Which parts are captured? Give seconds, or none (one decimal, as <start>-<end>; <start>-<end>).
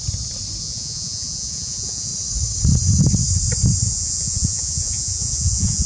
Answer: 0.0-0.6; 2.1-3.9